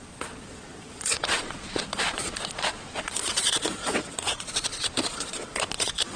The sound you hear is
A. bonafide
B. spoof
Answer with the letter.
B